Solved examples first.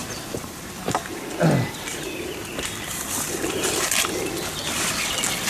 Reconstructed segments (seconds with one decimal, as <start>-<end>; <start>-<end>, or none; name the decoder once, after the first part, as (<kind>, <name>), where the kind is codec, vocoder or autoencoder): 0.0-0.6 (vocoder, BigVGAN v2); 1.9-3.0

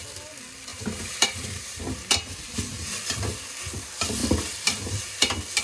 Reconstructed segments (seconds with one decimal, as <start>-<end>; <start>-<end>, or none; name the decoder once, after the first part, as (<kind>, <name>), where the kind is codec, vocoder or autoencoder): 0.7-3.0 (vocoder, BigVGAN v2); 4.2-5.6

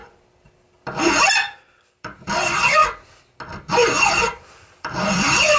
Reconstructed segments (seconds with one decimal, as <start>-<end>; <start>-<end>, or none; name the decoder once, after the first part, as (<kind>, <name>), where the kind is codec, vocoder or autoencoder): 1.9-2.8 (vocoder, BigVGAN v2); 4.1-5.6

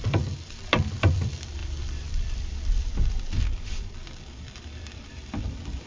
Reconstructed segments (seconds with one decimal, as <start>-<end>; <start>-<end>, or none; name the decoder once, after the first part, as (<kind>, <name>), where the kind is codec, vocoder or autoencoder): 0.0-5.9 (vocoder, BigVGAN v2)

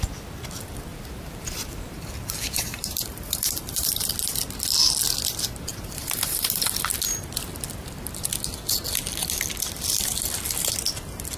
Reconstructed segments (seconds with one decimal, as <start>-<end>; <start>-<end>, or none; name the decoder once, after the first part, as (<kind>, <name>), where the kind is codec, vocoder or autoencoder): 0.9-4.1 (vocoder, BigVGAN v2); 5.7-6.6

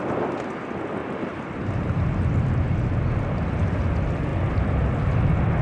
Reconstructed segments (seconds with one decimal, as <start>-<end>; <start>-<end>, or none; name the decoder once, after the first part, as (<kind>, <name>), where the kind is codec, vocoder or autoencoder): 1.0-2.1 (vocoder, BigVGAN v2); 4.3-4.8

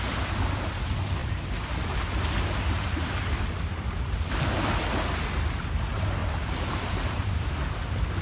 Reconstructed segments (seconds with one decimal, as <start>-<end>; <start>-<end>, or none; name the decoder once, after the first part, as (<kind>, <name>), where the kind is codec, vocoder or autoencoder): 1.2-2.4 (vocoder, BigVGAN v2); 6.2-7.6

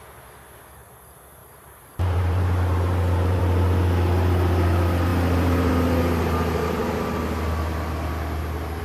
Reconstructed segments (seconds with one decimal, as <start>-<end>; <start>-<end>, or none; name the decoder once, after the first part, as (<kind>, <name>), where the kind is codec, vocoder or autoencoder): 1.4-3.4 (vocoder, BigVGAN v2)